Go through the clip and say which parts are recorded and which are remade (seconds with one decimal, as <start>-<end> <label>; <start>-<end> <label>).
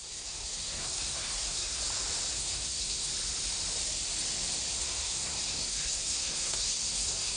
0.0-1.8 remade; 1.8-2.3 recorded; 2.3-3.1 remade; 3.1-4.8 recorded; 4.8-7.4 remade